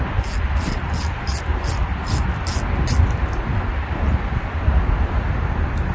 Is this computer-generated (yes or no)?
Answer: no